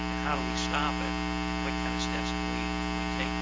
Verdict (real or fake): real